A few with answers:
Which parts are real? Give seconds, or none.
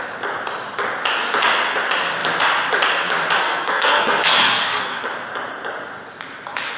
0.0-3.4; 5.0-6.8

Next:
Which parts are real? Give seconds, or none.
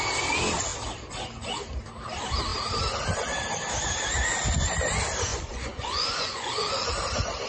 0.0-5.3; 6.9-7.5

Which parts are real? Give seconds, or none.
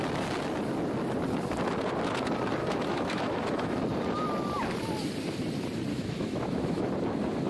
0.0-2.6; 3.8-5.9; 6.8-7.5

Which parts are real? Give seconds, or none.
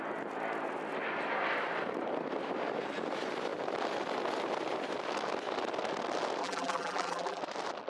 0.0-6.4; 7.4-7.9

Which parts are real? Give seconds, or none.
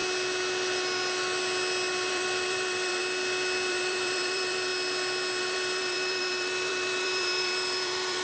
0.0-2.1; 3.0-3.7; 4.7-5.4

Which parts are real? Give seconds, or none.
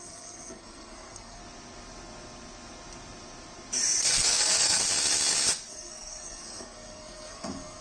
1.4-4.0; 4.8-5.7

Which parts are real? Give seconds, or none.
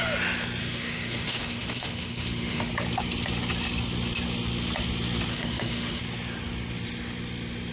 0.0-0.6; 2.7-5.3; 6.0-7.7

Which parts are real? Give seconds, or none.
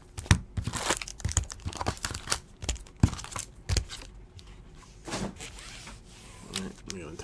0.0-1.1; 1.9-7.2